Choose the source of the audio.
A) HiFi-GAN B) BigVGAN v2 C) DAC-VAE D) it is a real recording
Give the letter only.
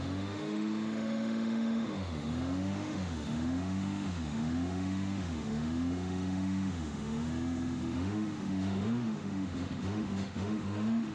C